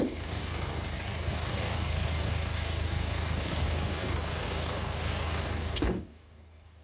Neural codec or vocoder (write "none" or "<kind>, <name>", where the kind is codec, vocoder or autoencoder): codec, DAC